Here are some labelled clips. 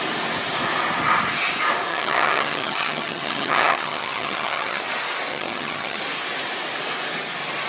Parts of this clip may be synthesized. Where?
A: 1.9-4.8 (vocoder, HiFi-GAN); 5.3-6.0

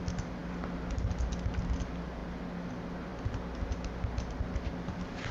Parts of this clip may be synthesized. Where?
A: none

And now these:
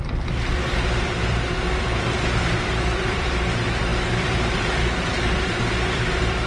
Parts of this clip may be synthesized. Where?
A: 0.0-6.5 (vocoder, BigVGAN v2)

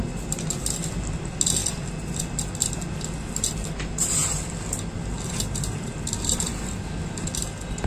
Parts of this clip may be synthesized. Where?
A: none

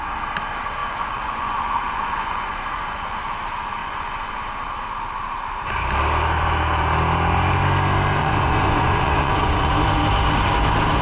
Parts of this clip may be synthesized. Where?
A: 0.8-3.2 (vocoder, Vocos); 3.8-4.3; 8.2-9.7